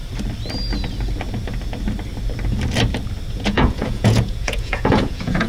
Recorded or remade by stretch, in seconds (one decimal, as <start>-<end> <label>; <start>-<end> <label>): 0.0-3.3 recorded; 3.3-5.5 remade